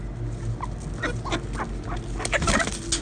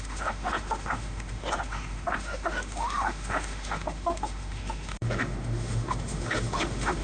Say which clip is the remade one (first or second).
second